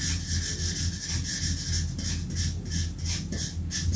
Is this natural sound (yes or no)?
yes